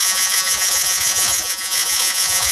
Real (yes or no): no